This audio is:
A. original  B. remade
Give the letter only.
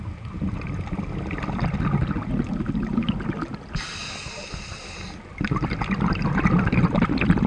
A